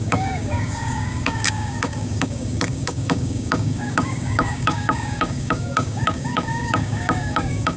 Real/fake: fake